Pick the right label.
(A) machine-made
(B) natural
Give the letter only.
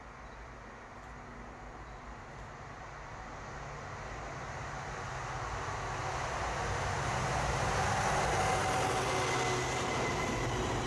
B